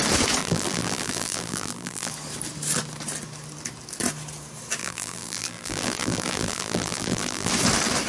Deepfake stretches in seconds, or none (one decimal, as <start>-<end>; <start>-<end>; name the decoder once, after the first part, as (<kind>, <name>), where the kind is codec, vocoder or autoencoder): 0.4-2.1 (vocoder, BigVGAN v2); 4.8-7.5